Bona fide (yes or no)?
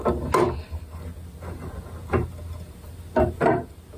yes